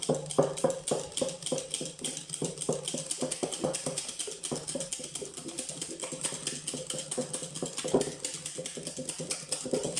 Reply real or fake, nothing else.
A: real